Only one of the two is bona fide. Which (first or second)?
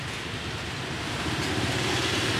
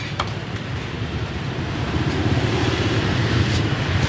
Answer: first